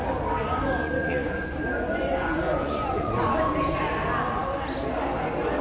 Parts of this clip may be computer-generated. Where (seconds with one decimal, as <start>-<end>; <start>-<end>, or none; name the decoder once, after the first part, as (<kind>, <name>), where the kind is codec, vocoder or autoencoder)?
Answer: 0.4-3.8 (vocoder, Vocos)